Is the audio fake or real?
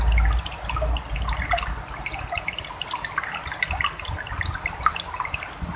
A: real